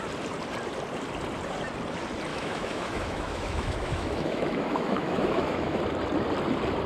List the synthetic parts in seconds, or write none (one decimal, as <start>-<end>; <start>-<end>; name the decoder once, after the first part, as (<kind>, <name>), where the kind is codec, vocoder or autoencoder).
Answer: 2.3-5.8 (autoencoder, DAC-VAE)